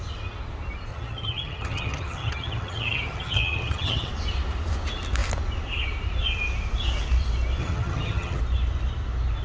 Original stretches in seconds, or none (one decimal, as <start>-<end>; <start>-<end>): 0.0-0.9; 4.1-7.6; 8.4-9.4